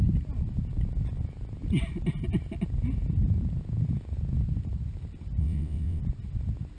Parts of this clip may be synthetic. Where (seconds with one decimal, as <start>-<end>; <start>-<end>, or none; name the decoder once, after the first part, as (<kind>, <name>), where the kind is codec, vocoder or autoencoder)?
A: 5.4-6.0 (vocoder, WaveNeXt)